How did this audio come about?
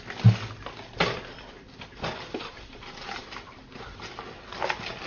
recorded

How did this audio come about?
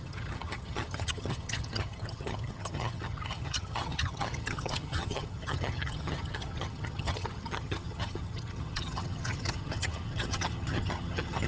remade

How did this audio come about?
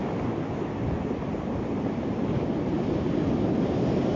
recorded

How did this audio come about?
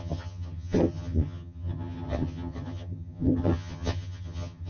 remade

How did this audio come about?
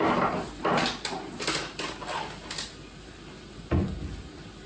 recorded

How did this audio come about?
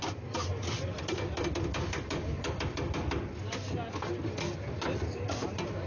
recorded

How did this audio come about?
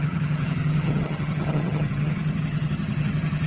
remade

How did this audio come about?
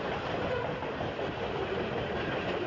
recorded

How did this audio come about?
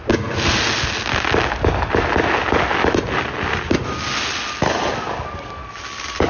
recorded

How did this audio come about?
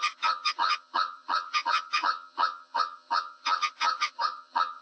remade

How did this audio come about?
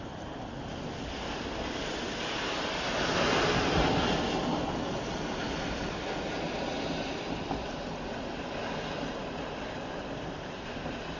recorded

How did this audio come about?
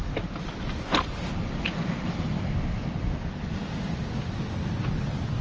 recorded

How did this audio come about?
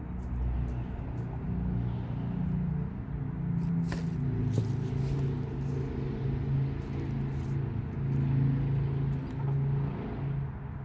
recorded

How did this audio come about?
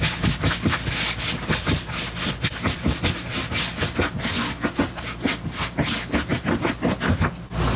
recorded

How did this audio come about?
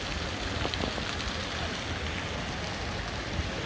recorded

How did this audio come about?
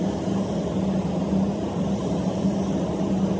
recorded